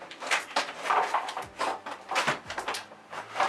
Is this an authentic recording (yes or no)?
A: no